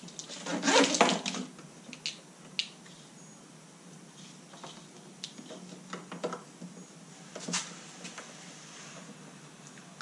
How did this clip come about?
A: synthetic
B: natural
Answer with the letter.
B